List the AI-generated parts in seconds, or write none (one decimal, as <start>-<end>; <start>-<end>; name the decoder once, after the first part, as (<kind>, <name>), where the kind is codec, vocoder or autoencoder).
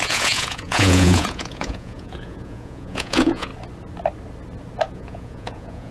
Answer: 0.0-3.5 (vocoder, Vocos); 4.9-5.9